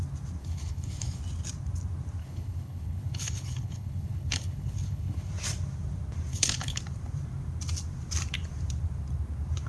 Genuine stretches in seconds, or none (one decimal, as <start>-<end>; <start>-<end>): 0.0-0.4; 1.2-2.2; 5.3-6.3; 6.8-9.7